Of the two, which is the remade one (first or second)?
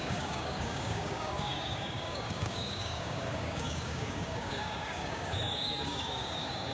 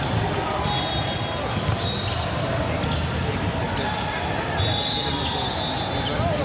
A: first